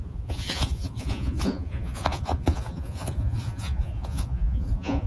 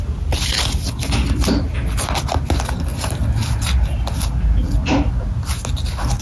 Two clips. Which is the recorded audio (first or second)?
second